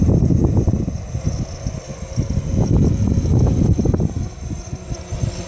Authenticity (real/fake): real